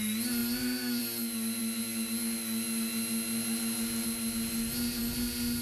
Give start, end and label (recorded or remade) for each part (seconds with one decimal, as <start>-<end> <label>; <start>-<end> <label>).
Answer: 0.0-5.6 recorded